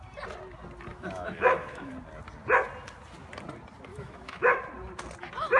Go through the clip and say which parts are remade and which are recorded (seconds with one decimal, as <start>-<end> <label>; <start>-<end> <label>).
0.0-0.9 recorded; 0.9-1.9 remade; 1.9-3.9 recorded; 3.9-4.6 remade; 4.6-5.6 recorded